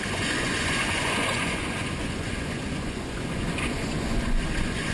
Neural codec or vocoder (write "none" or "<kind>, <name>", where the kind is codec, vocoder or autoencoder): vocoder, Vocos